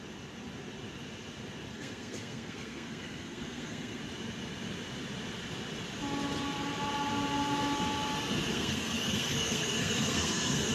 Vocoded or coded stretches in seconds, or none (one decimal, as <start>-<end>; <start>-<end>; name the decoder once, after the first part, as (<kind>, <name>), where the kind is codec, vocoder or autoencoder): 1.7-4.0 (codec, SNAC); 8.5-10.7